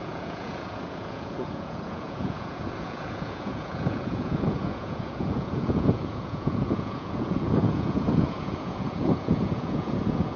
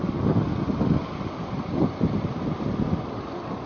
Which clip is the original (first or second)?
second